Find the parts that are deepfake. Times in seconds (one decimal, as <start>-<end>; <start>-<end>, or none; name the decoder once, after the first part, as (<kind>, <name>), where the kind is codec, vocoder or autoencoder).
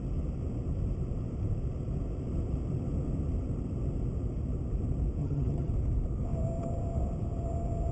5.2-5.7 (vocoder, HiFi-GAN)